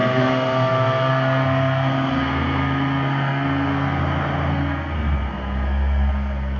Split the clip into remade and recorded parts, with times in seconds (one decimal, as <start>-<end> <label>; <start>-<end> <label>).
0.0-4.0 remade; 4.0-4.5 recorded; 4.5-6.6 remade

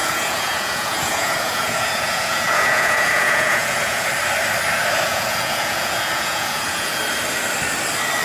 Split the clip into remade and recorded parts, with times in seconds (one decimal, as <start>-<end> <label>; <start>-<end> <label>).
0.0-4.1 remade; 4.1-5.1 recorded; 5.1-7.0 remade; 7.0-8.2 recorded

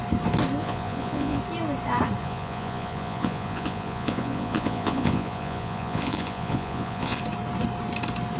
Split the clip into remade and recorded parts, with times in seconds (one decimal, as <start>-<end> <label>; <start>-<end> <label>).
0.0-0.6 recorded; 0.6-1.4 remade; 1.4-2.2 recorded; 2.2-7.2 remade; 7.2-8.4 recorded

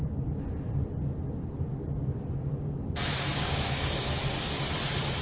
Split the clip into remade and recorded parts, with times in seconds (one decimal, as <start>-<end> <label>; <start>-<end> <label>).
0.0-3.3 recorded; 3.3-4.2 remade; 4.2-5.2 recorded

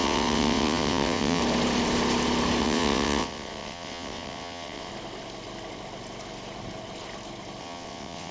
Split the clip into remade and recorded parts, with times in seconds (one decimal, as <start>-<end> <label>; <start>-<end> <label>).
0.0-1.4 remade; 1.4-2.6 recorded; 2.6-4.9 remade; 4.9-7.6 recorded; 7.6-8.3 remade